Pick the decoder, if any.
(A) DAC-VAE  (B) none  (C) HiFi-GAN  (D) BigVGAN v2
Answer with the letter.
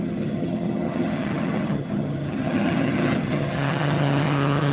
C